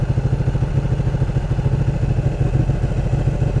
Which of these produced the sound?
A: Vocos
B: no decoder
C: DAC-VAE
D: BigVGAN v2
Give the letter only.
B